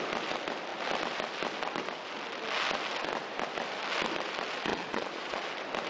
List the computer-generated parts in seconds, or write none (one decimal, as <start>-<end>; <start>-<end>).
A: 4.7-5.5